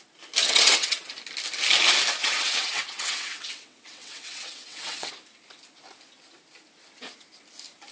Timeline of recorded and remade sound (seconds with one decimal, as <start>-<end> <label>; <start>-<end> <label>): 0.0-0.4 recorded; 0.4-1.1 remade; 1.1-2.2 recorded; 2.2-5.1 remade; 5.1-7.9 recorded